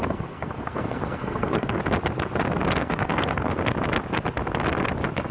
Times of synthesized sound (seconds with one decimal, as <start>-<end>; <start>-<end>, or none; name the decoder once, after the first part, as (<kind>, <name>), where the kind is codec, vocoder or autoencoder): 0.0-1.8 (codec, SNAC); 2.8-3.6